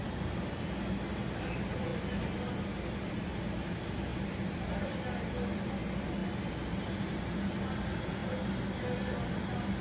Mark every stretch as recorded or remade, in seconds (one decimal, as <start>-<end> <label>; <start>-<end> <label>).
0.0-4.1 recorded; 4.1-5.0 remade; 5.0-9.8 recorded